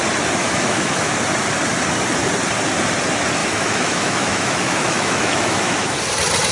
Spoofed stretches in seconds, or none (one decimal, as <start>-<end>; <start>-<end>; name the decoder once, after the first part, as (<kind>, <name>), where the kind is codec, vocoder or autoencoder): 0.4-1.1 (autoencoder, DAC-VAE); 3.4-6.0